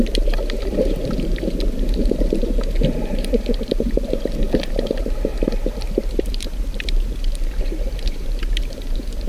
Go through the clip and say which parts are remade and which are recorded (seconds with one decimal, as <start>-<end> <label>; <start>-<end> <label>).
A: 0.0-5.3 remade; 5.3-6.1 recorded; 6.1-9.3 remade